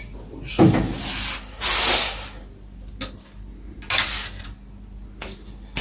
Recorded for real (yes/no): yes